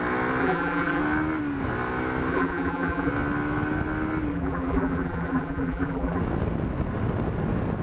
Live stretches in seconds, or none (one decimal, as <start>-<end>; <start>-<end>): 0.0-0.4; 1.0-2.3; 3.1-4.3; 6.2-7.8